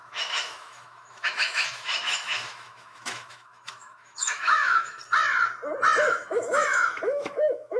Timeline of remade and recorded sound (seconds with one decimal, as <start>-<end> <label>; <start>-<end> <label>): 0.0-5.0 remade; 5.0-6.0 recorded; 6.0-7.8 remade